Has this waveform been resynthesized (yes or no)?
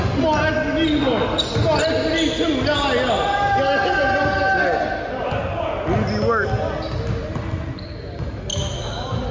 no